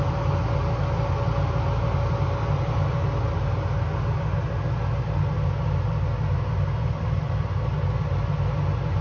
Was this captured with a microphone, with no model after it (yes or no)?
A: yes